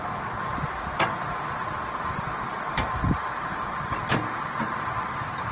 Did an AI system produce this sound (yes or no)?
no